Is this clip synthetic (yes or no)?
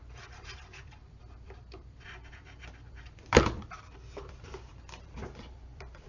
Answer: yes